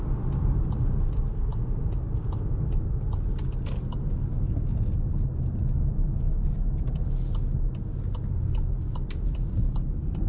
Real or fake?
real